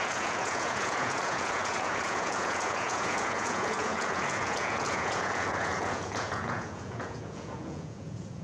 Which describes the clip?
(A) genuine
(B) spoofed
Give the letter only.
B